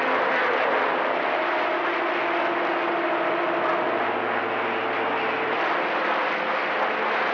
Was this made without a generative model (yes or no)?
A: yes